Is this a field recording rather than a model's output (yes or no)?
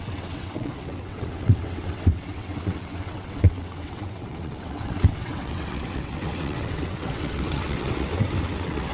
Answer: no